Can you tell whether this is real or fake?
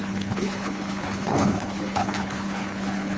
fake